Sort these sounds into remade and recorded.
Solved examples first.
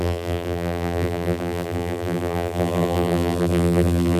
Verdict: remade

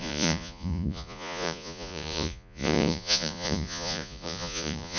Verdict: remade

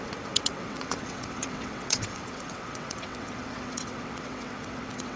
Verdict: remade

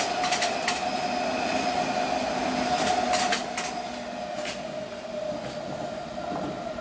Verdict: recorded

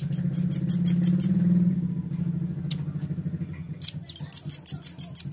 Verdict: recorded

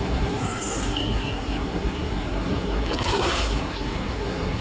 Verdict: remade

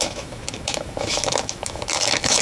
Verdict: remade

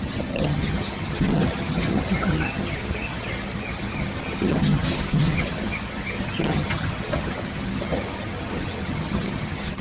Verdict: remade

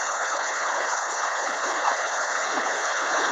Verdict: remade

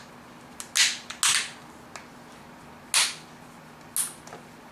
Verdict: recorded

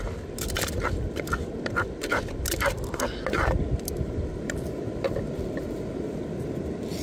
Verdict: recorded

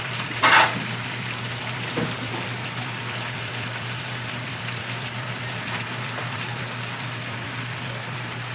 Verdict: remade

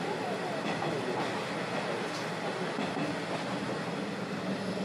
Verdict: recorded